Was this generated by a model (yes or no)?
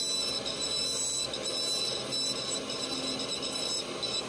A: no